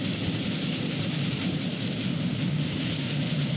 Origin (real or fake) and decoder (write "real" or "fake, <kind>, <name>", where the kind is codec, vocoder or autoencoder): fake, vocoder, BigVGAN v2